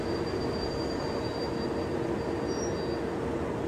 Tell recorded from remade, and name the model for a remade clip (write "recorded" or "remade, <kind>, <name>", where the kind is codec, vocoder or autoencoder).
recorded